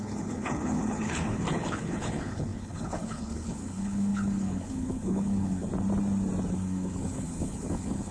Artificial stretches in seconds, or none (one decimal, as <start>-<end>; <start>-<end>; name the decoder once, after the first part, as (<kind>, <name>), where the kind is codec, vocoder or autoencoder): 0.0-5.7 (codec, HILCodec); 6.5-8.1